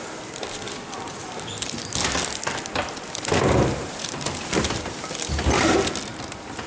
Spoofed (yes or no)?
yes